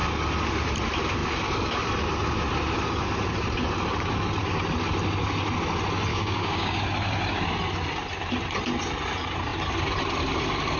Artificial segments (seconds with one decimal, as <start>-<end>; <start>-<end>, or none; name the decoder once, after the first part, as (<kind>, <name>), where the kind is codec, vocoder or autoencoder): 6.1-6.8 (codec, DAC)